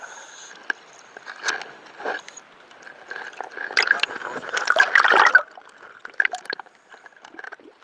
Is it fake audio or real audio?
real